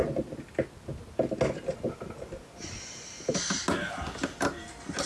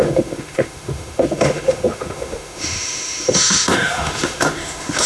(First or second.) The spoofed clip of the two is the second